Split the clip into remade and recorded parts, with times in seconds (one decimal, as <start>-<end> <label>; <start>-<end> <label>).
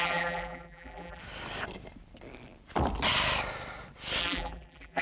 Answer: 0.0-1.2 remade; 1.2-4.2 recorded; 4.2-5.0 remade